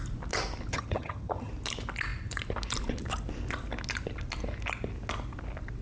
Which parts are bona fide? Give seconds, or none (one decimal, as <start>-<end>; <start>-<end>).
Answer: 0.0-0.7; 1.5-5.8

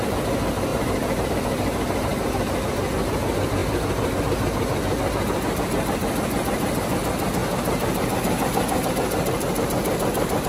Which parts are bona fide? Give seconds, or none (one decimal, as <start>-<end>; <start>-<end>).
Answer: 0.0-0.7; 1.3-10.5

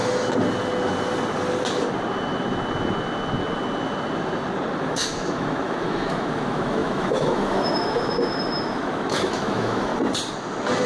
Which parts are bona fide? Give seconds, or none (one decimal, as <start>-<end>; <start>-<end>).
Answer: 0.0-4.8; 9.9-10.9

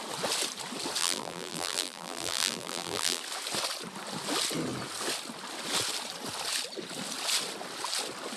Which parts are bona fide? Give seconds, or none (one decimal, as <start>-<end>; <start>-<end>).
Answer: 0.0-1.0; 3.2-8.4

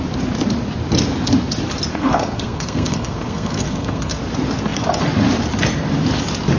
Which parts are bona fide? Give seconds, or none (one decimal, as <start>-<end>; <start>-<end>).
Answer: 0.0-1.9; 4.2-6.6